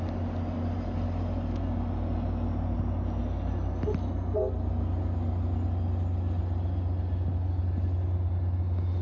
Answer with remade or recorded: recorded